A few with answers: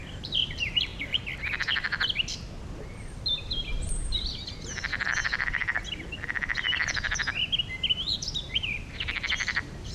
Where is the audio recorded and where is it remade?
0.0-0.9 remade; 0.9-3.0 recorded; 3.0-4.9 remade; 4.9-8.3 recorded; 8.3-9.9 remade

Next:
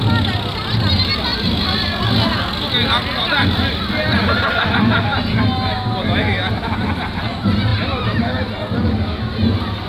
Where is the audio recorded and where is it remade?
0.0-9.9 recorded

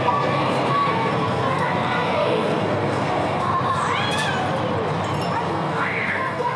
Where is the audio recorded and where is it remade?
0.0-3.5 remade; 3.5-5.5 recorded; 5.5-6.6 remade

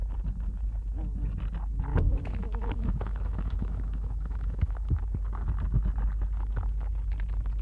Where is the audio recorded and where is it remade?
0.0-1.9 recorded; 1.9-5.0 remade; 5.0-7.6 recorded